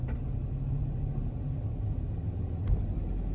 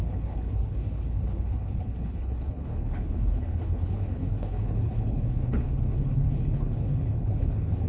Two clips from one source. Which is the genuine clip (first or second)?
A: first